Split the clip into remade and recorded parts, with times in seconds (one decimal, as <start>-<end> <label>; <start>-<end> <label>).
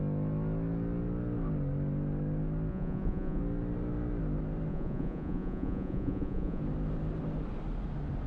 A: 0.0-2.7 recorded; 2.7-3.4 remade; 3.4-4.7 recorded; 4.7-6.6 remade; 6.6-8.3 recorded